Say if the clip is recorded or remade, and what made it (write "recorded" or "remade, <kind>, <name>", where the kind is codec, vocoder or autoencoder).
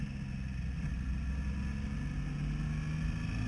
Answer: recorded